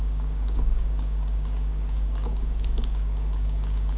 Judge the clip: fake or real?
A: fake